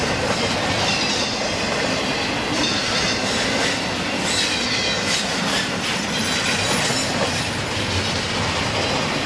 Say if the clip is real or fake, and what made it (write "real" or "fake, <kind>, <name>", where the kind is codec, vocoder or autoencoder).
real